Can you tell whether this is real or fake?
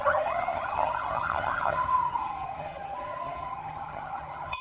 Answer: fake